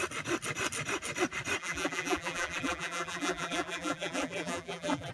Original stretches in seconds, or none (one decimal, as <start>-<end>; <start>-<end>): 0.0-1.6